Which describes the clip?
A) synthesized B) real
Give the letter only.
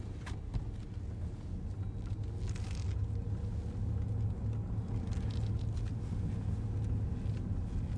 B